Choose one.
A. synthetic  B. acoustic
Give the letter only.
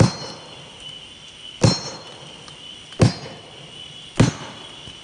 B